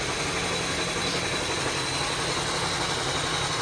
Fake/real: real